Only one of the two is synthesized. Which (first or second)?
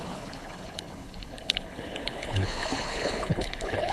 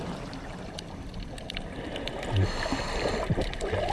first